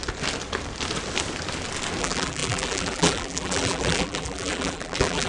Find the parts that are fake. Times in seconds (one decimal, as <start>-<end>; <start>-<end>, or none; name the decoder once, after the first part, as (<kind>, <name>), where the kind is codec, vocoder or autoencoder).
2.0-5.3 (vocoder, BigVGAN v2)